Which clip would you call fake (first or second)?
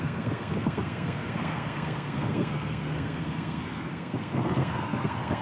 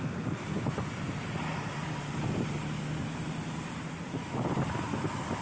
first